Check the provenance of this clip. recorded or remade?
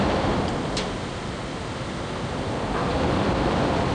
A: recorded